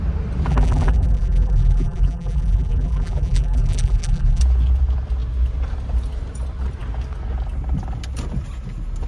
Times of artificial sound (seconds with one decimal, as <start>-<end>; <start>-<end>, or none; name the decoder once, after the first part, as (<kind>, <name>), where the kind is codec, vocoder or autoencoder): 0.5-4.4 (vocoder, BigVGAN v2)